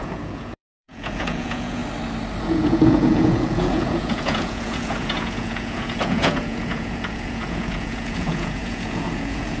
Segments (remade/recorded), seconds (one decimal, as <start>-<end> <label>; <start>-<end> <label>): 0.0-1.8 remade; 1.8-2.4 recorded; 2.4-9.6 remade